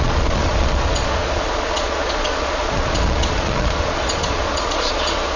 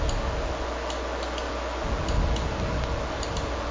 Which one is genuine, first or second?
second